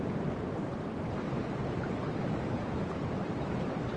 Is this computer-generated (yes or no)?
no